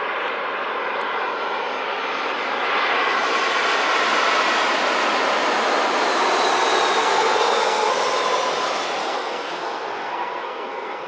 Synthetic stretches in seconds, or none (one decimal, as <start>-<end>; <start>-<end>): 7.0-7.9; 9.0-11.1